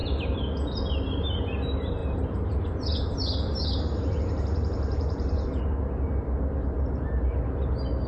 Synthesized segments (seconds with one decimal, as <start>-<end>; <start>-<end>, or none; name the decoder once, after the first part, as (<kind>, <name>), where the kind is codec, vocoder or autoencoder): 2.0-5.6 (vocoder, BigVGAN v2)